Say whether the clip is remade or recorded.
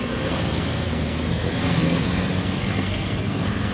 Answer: remade